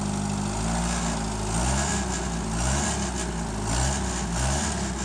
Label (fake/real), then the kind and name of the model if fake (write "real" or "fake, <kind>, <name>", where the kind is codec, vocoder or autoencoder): real